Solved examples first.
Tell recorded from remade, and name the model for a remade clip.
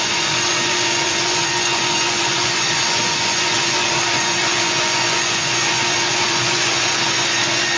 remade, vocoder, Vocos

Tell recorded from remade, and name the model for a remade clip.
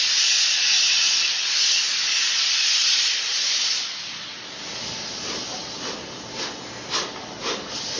recorded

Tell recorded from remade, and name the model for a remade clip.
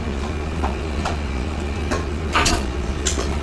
remade, vocoder, Vocos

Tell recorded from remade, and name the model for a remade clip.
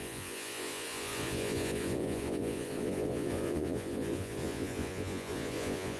remade, vocoder, Vocos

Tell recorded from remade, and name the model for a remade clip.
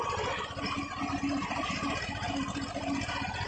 recorded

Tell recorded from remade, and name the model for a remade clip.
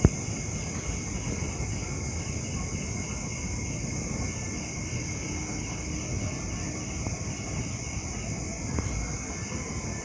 recorded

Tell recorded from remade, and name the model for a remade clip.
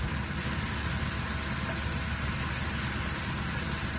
recorded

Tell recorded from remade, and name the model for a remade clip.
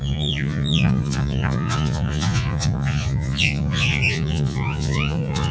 remade, vocoder, Vocos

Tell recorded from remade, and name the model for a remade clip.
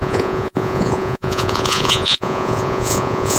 remade, vocoder, Vocos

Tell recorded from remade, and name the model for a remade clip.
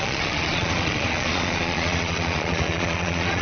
remade, vocoder, Vocos